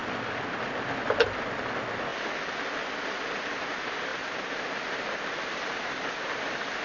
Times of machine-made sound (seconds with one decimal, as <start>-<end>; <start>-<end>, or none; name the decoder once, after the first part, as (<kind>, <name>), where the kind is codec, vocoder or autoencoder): 4.1-6.8 (vocoder, BigVGAN v2)